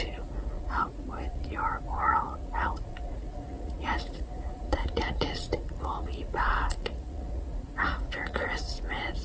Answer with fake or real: fake